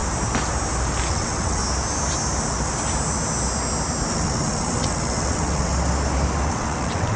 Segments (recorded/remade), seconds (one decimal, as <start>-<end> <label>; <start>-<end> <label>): 0.0-1.1 recorded; 1.1-1.6 remade; 1.6-4.1 recorded; 4.1-5.7 remade; 5.7-6.5 recorded; 6.5-7.2 remade